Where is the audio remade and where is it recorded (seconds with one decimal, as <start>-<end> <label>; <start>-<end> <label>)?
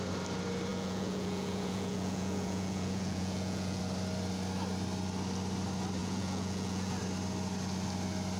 0.0-0.7 recorded; 0.7-3.8 remade; 3.8-6.0 recorded; 6.0-7.0 remade; 7.0-8.4 recorded